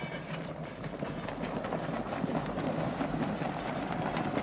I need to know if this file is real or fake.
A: real